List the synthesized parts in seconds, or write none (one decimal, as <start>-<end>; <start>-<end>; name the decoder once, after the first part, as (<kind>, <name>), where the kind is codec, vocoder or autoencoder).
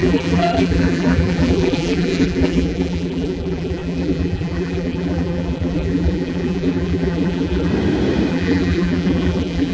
0.0-7.7 (vocoder, BigVGAN v2); 8.3-9.7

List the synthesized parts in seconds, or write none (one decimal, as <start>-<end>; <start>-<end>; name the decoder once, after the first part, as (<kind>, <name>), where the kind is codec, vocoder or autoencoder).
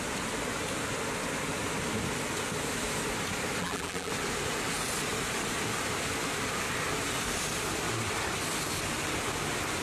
3.6-4.1 (vocoder, BigVGAN v2)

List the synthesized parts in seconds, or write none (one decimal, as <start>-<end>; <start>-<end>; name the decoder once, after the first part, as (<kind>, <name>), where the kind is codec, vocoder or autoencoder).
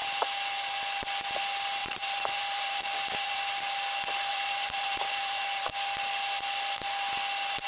1.8-3.4 (vocoder, BigVGAN v2); 4.3-5.7